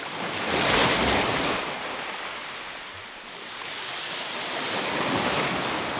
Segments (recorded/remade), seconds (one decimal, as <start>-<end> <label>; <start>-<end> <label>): 0.0-6.0 recorded